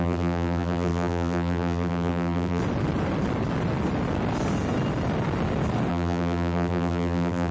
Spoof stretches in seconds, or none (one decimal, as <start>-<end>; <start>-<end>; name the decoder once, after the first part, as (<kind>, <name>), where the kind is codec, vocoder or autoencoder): 0.0-2.6 (vocoder, BigVGAN v2); 5.9-7.5